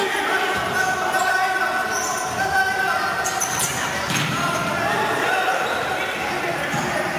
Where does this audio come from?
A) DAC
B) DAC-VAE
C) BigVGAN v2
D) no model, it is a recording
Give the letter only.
D